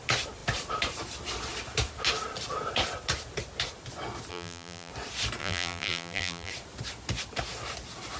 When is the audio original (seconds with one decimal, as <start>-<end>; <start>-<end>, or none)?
0.0-4.3; 4.9-5.4; 6.5-8.2